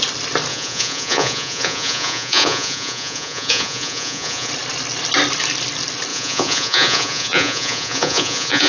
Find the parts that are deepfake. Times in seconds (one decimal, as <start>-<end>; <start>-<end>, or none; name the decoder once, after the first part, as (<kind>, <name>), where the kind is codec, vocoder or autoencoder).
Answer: 0.5-4.5 (vocoder, Vocos); 6.1-8.7